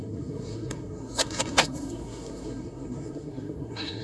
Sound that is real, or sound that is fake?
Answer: fake